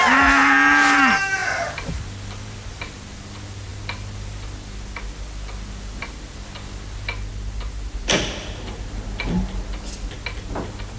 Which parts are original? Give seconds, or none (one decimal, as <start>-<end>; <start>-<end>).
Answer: 0.0-1.4; 2.7-11.0